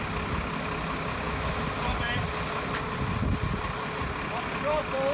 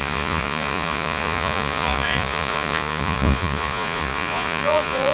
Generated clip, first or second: second